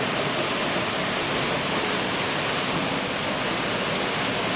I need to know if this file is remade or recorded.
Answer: recorded